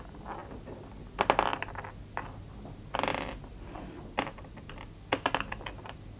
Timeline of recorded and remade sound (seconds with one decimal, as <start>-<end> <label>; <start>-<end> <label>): 0.0-6.2 recorded